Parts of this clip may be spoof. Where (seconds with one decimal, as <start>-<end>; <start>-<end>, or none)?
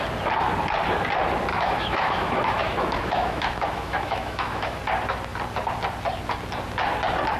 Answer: 1.5-4.8